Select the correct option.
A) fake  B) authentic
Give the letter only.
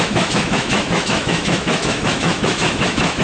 A